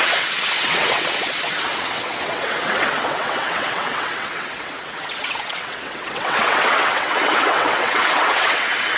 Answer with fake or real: fake